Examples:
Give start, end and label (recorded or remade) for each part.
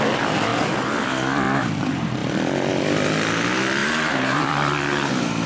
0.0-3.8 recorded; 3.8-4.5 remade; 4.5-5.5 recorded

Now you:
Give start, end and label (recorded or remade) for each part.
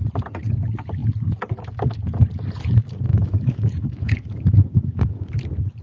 0.0-3.1 recorded; 3.1-5.3 remade; 5.3-5.8 recorded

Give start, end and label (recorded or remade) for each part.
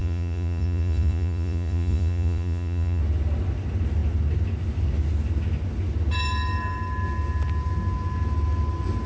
0.0-3.0 remade; 3.0-9.1 recorded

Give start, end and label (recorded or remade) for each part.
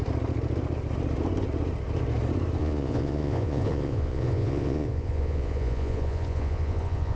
0.0-2.6 recorded; 2.6-7.2 remade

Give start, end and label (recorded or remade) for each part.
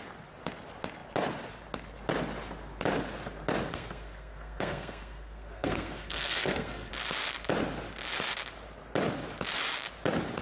0.0-3.7 recorded; 3.7-6.9 remade; 6.9-10.4 recorded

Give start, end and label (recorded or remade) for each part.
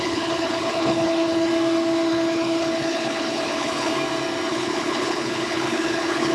0.0-1.5 remade; 1.5-2.1 recorded; 2.1-3.9 remade; 3.9-4.5 recorded; 4.5-6.3 remade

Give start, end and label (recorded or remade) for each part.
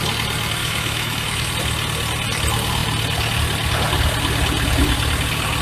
0.0-0.6 recorded; 0.6-1.5 remade; 1.5-5.6 recorded